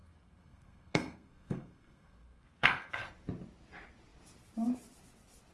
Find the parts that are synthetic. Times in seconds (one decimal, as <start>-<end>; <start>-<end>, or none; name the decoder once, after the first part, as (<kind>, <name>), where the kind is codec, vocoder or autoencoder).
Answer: 0.0-2.9 (codec, SNAC)